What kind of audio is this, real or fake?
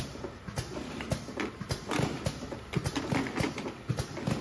real